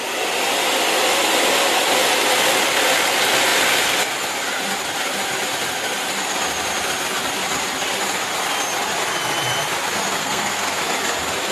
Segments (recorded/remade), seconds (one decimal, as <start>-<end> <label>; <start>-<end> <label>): 0.0-10.2 recorded; 10.2-10.8 remade; 10.8-11.5 recorded